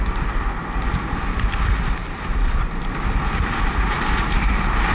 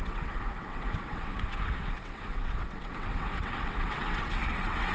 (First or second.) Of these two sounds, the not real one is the second